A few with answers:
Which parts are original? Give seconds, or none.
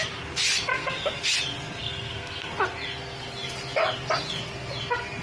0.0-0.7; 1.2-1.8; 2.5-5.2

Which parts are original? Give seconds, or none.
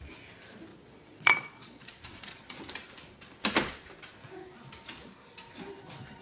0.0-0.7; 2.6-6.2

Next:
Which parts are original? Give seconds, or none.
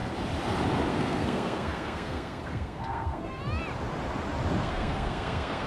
0.0-0.9; 3.4-4.6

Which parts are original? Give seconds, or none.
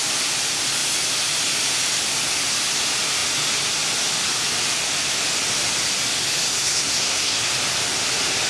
0.0-6.5; 7.5-8.5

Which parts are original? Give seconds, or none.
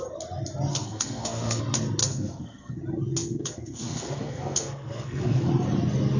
0.0-0.7; 1.6-2.0; 2.8-3.2; 5.5-6.2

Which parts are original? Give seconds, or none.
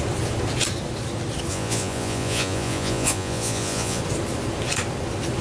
0.0-1.5; 4.0-5.4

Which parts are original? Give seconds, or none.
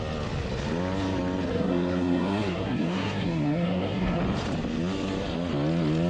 0.0-1.5; 4.2-6.1